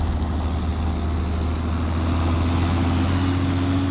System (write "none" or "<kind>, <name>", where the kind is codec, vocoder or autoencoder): none